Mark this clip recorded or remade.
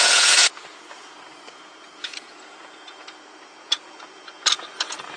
remade